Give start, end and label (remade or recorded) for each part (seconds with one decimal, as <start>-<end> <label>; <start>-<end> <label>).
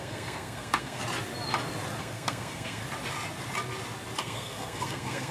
0.0-1.0 remade; 1.0-2.0 recorded; 2.0-2.8 remade; 2.8-4.2 recorded; 4.2-5.3 remade